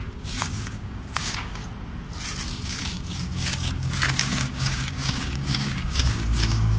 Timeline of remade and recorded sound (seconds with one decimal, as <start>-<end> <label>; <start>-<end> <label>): 0.0-1.6 remade; 1.6-2.5 recorded; 2.5-6.8 remade